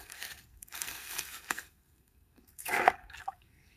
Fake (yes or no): yes